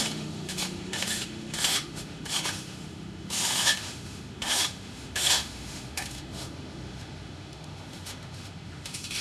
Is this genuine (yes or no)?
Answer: no